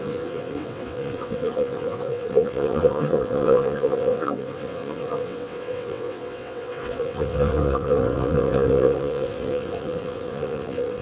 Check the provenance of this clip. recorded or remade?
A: remade